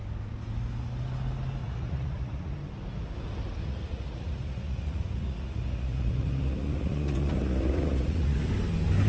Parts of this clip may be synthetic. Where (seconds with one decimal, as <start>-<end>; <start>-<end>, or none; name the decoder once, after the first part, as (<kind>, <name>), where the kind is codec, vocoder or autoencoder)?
1.6-2.5 (vocoder, Vocos); 3.6-8.5